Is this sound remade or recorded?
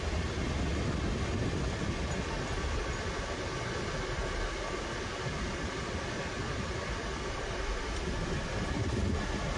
recorded